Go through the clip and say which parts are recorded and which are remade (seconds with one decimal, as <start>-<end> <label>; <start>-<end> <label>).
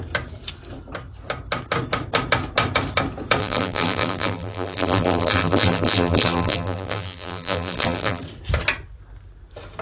0.0-3.4 recorded; 3.4-8.2 remade; 8.2-9.8 recorded